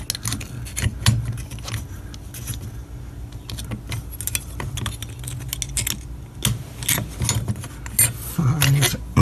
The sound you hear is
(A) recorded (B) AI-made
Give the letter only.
A